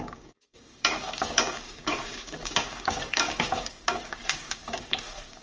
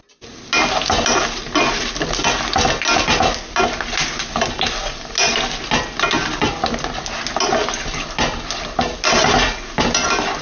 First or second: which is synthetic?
first